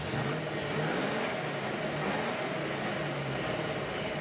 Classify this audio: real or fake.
real